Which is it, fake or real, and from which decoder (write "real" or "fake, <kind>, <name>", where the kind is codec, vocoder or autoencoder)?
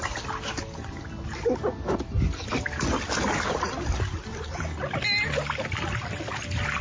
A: real